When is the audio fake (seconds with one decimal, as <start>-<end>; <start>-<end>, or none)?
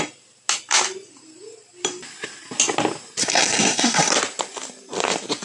3.2-4.1